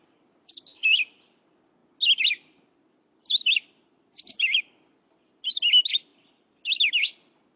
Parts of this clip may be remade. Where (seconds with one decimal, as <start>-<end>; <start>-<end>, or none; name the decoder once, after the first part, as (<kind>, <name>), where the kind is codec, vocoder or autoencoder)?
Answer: none